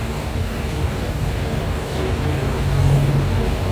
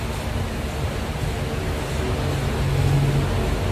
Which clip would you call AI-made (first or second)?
first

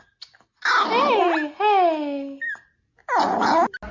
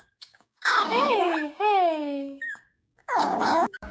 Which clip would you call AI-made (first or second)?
second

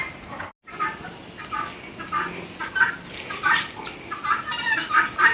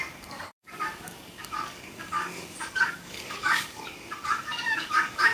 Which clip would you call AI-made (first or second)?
second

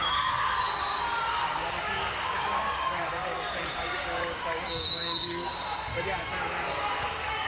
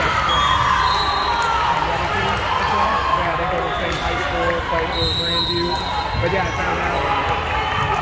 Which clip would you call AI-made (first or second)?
first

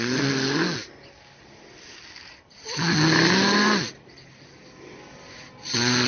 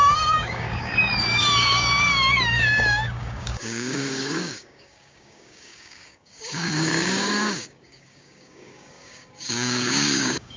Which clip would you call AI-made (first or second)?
second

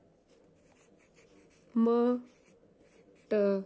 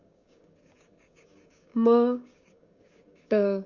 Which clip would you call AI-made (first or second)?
second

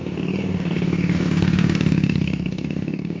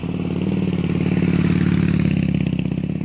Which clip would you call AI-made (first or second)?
first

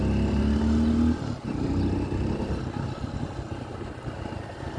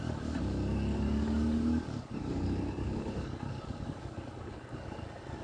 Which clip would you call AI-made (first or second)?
second